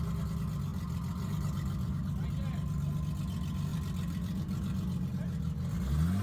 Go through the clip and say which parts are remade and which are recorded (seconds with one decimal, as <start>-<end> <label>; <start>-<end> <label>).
0.0-0.7 recorded; 0.7-1.9 remade; 1.9-3.7 recorded; 3.7-5.1 remade; 5.1-6.2 recorded